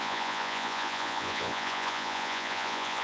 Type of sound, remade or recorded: remade